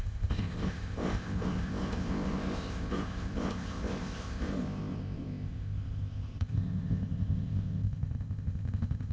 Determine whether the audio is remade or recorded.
remade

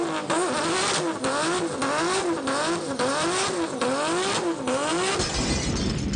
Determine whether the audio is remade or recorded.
recorded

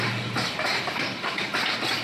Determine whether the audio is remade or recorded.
recorded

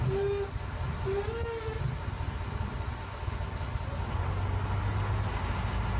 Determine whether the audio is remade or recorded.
recorded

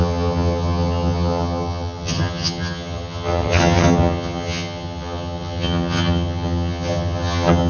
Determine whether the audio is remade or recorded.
remade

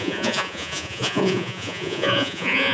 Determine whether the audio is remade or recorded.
remade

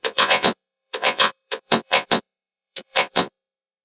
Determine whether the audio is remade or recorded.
remade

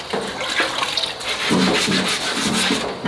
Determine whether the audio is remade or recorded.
recorded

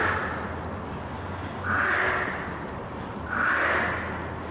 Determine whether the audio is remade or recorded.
recorded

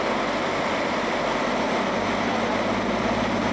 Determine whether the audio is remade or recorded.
recorded